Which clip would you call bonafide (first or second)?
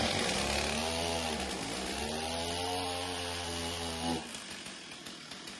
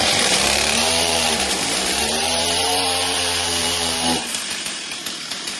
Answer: first